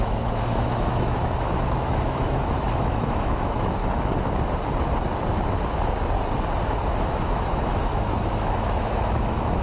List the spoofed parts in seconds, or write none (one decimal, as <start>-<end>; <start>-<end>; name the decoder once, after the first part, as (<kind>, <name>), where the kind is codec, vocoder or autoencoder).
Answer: 0.0-3.8 (autoencoder, DAC-VAE); 7.2-9.6